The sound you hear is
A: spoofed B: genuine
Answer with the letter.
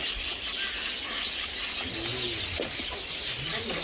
B